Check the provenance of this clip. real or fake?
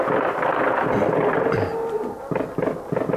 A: real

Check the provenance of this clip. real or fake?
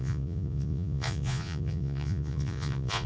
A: fake